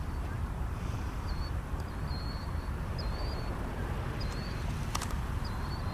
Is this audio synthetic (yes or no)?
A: yes